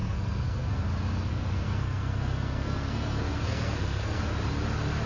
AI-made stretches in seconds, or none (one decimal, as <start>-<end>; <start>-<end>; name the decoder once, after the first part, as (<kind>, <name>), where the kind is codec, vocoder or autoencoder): 0.0-0.8 (codec, SNAC); 1.3-4.2